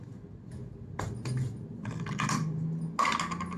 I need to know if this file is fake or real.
real